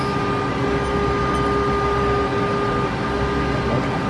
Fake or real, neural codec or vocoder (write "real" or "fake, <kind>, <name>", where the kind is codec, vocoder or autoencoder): real